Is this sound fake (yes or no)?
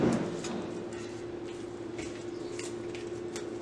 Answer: no